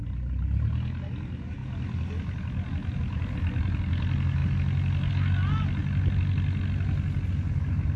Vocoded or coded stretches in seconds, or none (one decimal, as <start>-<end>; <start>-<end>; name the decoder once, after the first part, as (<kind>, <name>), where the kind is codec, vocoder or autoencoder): none